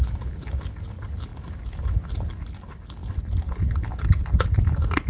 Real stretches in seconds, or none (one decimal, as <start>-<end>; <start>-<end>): 0.0-5.1